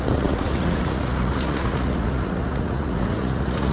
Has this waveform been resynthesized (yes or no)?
yes